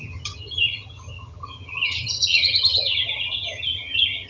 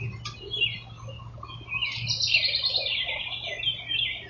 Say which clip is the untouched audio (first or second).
second